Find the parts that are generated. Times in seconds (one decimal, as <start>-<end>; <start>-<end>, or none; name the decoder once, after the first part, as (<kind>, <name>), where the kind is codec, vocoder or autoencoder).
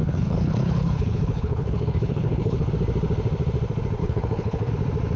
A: 0.0-2.7 (codec, HILCodec); 4.0-4.7